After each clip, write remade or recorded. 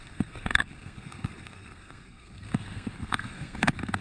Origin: remade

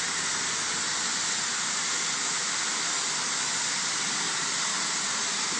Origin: recorded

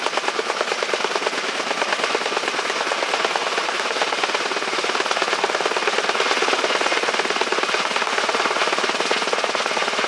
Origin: recorded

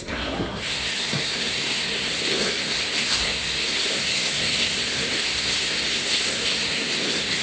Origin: remade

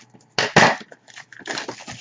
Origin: recorded